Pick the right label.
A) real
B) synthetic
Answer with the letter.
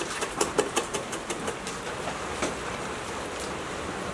A